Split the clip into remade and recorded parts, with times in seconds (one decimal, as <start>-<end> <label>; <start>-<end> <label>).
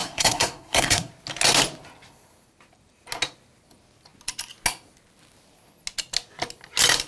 0.0-1.1 remade; 1.1-7.1 recorded